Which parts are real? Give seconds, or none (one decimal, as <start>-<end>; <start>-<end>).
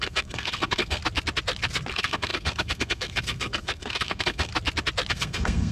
1.0-1.9; 4.5-5.1